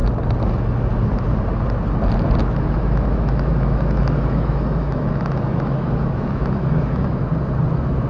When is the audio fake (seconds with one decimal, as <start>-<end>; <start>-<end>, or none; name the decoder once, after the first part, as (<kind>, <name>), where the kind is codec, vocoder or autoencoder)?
2.4-7.3 (autoencoder, DAC-VAE)